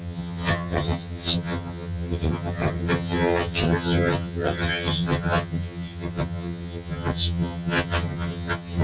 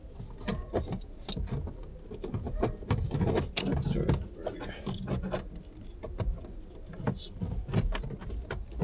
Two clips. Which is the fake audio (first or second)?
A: first